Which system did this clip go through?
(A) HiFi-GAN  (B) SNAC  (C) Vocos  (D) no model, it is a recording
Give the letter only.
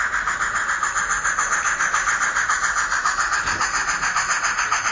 D